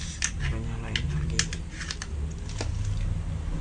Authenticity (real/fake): real